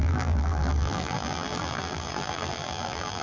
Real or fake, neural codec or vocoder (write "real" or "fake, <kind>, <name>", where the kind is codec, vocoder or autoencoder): fake, vocoder, BigVGAN v2